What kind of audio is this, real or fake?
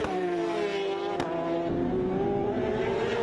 real